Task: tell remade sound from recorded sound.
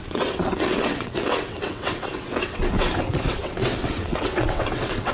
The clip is remade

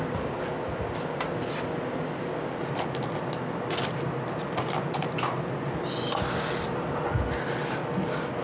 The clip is recorded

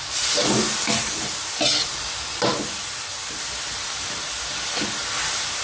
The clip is recorded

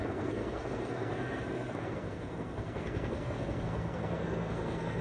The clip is remade